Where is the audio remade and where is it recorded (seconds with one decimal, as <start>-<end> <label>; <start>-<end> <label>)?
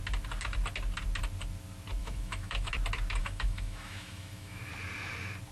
0.0-2.0 recorded; 2.0-2.7 remade; 2.7-3.2 recorded; 3.2-4.7 remade; 4.7-5.5 recorded